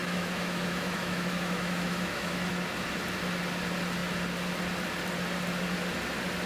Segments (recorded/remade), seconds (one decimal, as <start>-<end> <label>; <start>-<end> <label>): 0.0-2.5 remade; 2.5-6.5 recorded